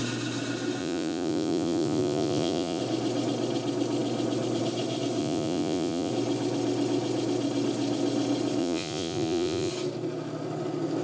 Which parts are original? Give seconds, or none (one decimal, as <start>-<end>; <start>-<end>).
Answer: 0.0-0.8; 2.8-5.2; 6.1-8.6; 9.7-11.0